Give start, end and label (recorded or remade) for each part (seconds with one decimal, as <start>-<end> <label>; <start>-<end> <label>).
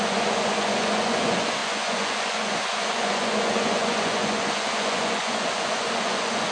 0.0-6.5 remade